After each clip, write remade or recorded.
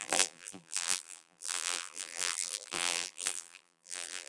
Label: remade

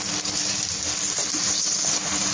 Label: recorded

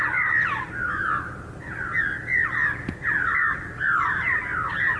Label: recorded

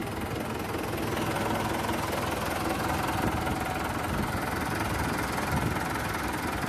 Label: recorded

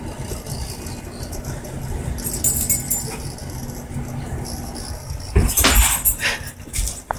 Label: recorded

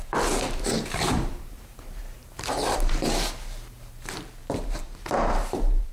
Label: remade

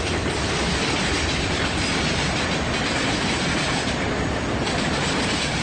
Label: remade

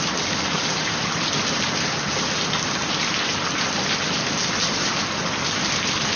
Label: recorded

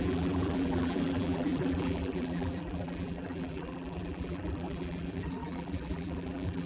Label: remade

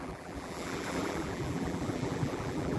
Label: remade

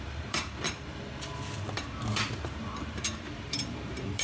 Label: remade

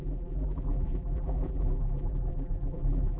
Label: remade